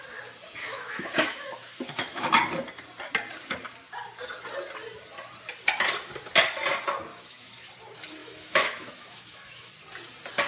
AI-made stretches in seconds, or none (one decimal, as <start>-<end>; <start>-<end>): 0.6-2.3; 7.1-7.7; 8.2-9.7